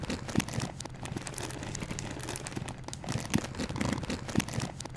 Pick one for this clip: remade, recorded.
recorded